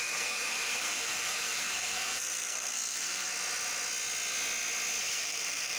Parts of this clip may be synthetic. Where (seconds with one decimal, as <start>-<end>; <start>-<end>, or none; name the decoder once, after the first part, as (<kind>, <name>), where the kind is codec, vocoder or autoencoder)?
0.0-3.3 (codec, SNAC); 5.0-5.8